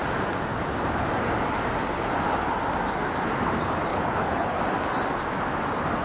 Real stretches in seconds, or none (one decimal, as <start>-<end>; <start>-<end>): 0.0-3.9; 4.6-6.0